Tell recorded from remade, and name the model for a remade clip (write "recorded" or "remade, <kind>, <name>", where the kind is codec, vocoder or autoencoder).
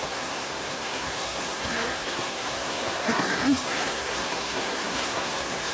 remade, codec, SNAC